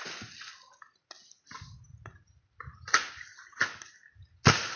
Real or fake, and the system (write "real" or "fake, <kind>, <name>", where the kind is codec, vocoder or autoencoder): real